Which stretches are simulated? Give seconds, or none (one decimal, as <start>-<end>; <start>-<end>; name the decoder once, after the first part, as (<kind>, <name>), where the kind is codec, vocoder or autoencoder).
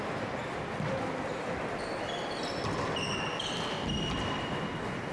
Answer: none